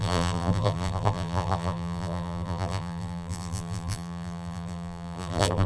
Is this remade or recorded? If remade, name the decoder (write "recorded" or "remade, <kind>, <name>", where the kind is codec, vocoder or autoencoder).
remade, vocoder, BigVGAN v2